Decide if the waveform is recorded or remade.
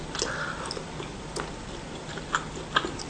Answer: recorded